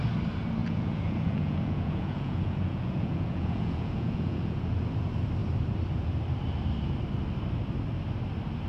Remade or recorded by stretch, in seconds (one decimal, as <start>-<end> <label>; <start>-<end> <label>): 0.0-0.6 recorded; 0.6-4.8 remade; 4.8-8.7 recorded